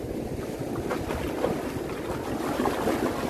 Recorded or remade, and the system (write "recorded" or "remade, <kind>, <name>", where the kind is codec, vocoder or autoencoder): recorded